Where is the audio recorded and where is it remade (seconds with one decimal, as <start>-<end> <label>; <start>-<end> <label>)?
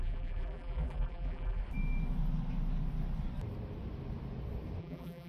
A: 0.0-1.6 remade; 1.6-4.8 recorded; 4.8-5.3 remade